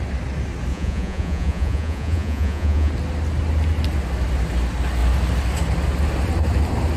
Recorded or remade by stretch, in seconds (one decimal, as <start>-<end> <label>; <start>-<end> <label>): 0.0-0.7 recorded; 0.7-2.9 remade; 2.9-7.0 recorded